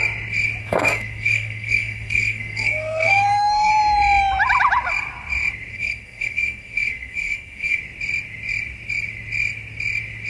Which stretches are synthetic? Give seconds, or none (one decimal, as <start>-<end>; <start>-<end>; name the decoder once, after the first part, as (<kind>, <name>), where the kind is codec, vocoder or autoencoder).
0.6-3.7 (codec, SNAC); 5.7-7.8